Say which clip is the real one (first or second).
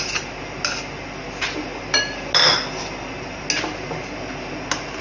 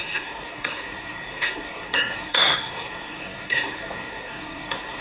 first